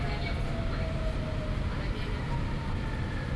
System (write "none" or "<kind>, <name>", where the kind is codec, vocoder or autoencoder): none